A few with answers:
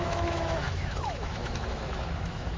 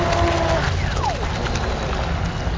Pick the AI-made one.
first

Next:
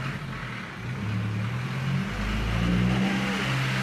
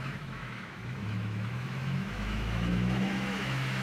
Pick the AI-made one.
second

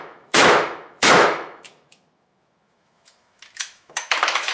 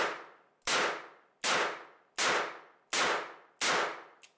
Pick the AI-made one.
first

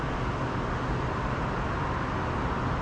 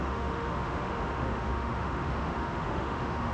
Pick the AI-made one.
second